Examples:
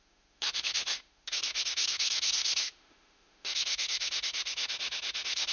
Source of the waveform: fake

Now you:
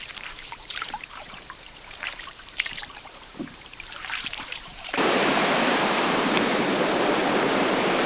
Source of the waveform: fake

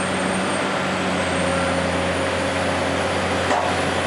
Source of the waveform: real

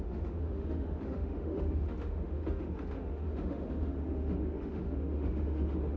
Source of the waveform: fake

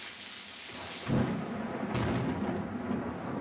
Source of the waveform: real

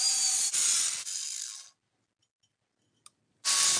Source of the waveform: real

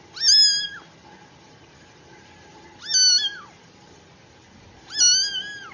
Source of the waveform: real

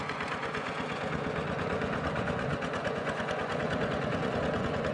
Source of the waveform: fake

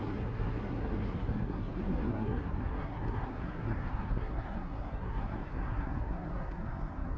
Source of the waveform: fake